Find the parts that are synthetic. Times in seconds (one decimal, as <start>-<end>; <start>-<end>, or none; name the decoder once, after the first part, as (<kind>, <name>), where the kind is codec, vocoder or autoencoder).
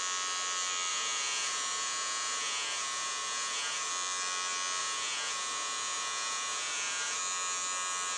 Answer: 0.9-3.9 (vocoder, Vocos); 4.8-7.2